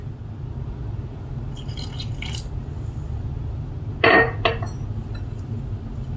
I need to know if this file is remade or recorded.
recorded